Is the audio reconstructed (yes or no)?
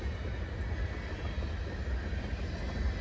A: no